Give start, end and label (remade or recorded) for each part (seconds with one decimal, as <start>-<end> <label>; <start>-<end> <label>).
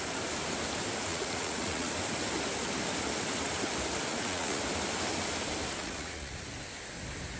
0.0-1.1 recorded; 1.1-1.9 remade; 1.9-4.1 recorded; 4.1-4.6 remade; 4.6-5.8 recorded; 5.8-6.4 remade; 6.4-7.4 recorded